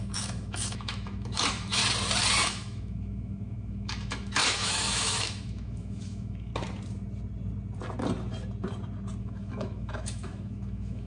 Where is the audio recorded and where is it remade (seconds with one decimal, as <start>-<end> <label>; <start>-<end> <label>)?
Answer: 0.0-1.8 remade; 1.8-2.4 recorded; 2.4-6.5 remade; 6.5-9.2 recorded; 9.2-11.1 remade